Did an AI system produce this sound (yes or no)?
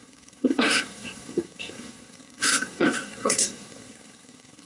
yes